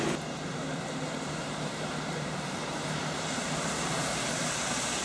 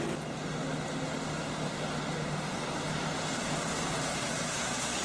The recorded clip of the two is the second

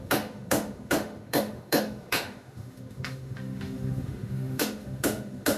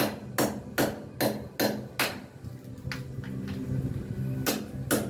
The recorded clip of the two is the second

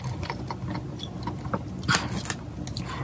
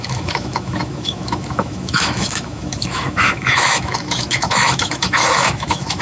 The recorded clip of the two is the first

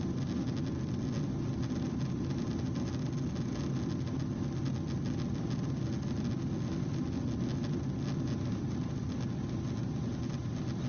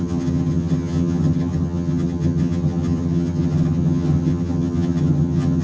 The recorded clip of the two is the first